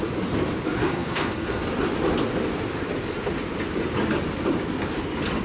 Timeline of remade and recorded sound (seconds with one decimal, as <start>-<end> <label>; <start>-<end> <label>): 0.0-0.8 recorded; 0.8-1.7 remade; 1.7-5.4 recorded